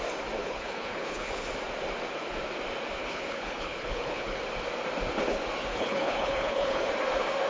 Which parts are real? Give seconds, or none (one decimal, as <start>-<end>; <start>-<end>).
0.0-0.4; 1.5-3.0; 4.4-5.7; 6.9-7.5